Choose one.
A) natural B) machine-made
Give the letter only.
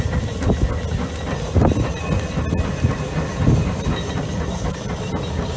A